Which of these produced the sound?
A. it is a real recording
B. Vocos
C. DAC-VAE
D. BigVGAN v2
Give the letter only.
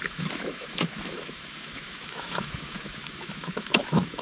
C